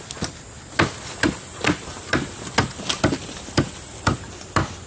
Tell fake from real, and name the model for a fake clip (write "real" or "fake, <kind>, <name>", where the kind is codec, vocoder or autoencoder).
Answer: real